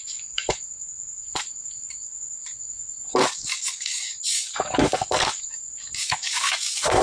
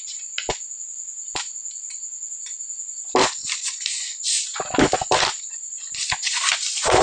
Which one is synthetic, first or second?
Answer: first